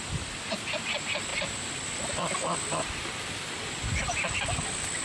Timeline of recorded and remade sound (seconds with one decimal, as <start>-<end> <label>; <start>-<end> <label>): 0.0-1.3 recorded; 1.3-4.3 remade; 4.3-5.0 recorded